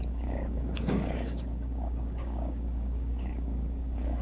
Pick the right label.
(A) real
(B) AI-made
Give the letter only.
B